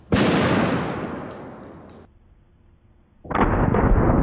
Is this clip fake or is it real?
real